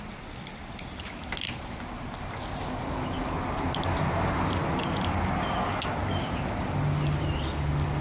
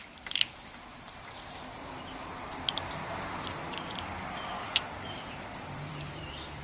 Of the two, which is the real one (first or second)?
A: first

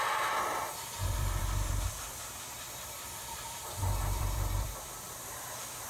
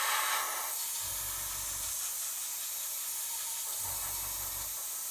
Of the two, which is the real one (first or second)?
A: second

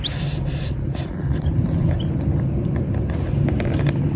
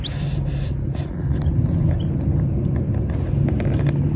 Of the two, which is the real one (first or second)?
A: second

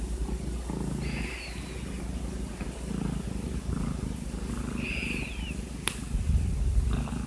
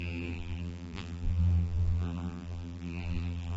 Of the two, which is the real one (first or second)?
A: first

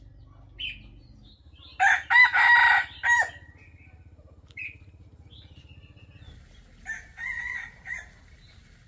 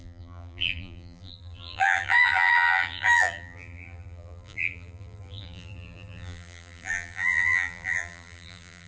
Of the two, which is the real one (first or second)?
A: first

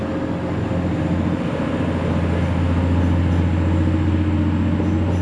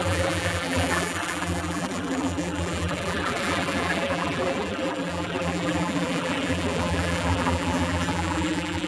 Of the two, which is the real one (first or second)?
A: first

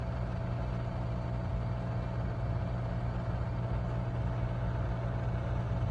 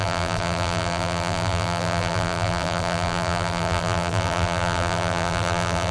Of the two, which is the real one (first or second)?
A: first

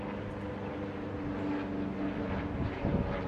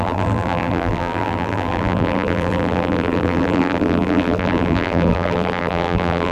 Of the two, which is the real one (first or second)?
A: first